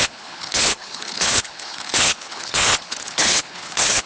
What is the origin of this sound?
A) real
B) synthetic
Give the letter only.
B